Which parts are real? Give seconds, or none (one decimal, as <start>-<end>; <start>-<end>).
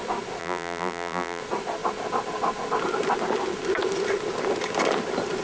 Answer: 0.0-0.4; 1.4-5.4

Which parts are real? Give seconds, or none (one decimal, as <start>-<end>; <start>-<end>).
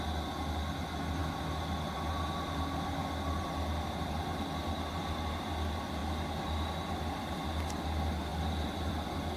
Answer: 0.0-9.4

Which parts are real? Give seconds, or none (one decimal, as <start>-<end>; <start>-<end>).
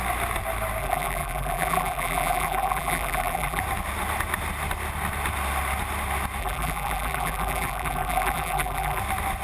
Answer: 0.0-0.8; 3.6-6.4; 9.0-9.4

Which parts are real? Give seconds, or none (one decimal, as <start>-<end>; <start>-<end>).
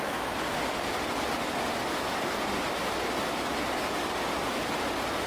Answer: 0.0-5.3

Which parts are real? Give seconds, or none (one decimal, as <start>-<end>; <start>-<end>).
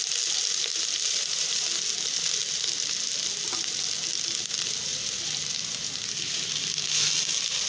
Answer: 0.0-0.7; 1.7-4.9; 5.9-7.7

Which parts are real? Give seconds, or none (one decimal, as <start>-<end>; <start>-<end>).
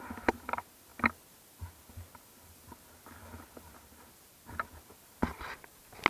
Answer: 0.0-6.1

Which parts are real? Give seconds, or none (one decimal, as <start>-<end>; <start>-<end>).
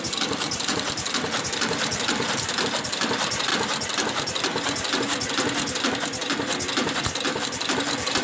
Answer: 3.5-7.4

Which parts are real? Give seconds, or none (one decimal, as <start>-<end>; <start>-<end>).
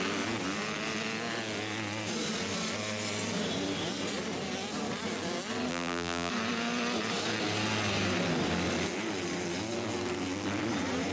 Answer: 0.0-5.7; 6.3-11.1